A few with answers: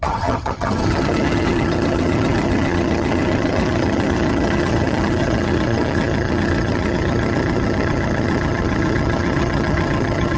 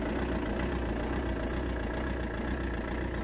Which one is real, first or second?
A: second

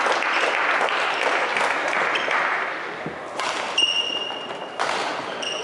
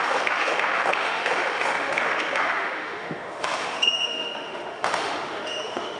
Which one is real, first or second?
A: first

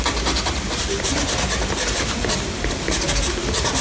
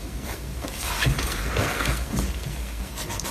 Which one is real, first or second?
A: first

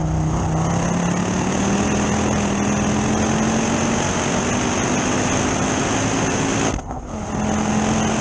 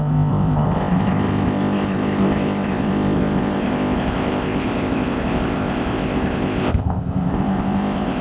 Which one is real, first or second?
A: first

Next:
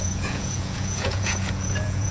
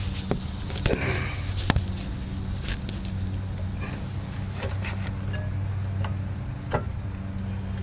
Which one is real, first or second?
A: second